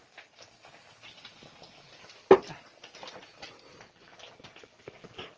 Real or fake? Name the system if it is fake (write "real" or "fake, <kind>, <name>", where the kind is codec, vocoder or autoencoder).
real